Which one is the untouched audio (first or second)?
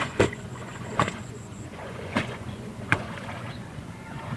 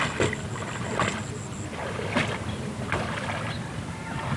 second